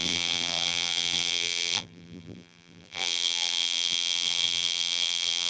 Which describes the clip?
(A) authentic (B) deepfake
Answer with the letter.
B